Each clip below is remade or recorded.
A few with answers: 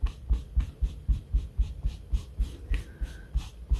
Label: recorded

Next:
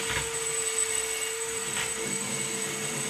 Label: recorded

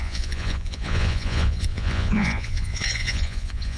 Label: remade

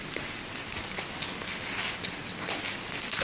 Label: recorded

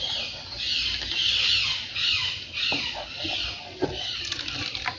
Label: recorded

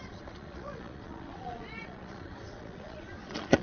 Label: remade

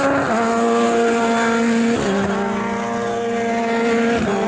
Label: recorded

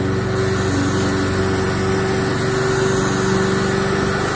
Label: recorded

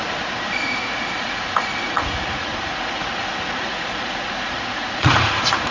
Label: remade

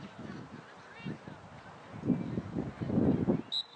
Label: recorded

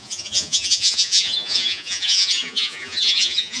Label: remade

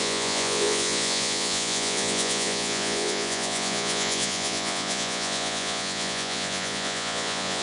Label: remade